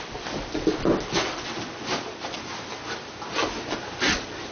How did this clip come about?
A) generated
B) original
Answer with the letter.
B